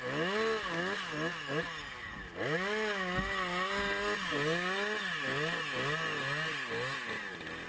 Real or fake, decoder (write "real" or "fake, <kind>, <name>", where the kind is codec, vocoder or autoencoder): real